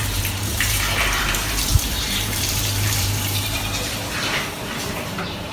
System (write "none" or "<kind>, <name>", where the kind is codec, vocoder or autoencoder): vocoder, BigVGAN v2